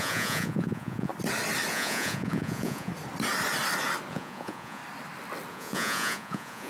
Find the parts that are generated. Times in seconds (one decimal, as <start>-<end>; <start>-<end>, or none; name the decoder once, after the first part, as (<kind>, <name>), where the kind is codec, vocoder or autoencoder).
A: 0.0-1.1 (vocoder, Vocos); 1.7-2.9; 4.1-4.8; 5.5-6.7

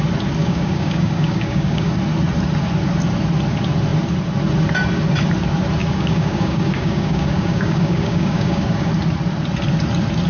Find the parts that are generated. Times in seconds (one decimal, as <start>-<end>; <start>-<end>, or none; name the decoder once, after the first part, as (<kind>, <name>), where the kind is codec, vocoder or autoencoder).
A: 0.4-1.9 (codec, DAC); 5.8-8.9